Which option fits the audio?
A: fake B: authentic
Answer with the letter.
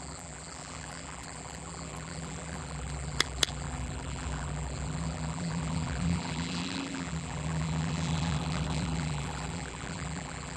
A